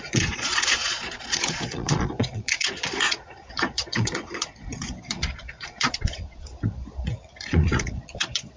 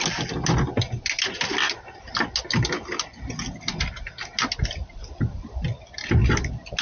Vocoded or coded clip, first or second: first